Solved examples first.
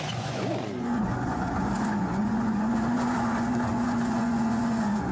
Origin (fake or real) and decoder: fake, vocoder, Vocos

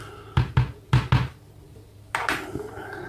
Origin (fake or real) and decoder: real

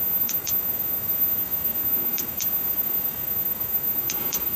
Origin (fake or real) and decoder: fake, autoencoder, DAC-VAE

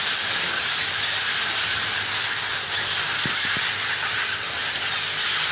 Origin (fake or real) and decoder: fake, vocoder, BigVGAN v2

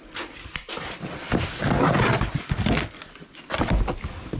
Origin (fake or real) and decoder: real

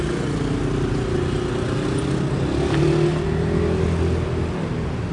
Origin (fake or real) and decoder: real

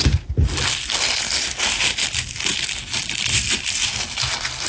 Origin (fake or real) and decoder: real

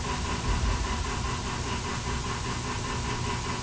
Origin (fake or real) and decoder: real